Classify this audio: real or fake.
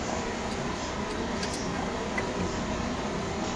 real